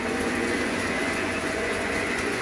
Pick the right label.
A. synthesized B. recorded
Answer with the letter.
A